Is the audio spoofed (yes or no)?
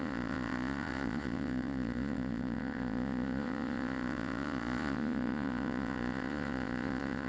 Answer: yes